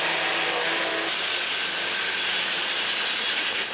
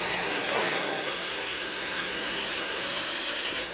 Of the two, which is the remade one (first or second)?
second